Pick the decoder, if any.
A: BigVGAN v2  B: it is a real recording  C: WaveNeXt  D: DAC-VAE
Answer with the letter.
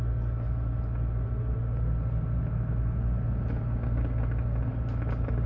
B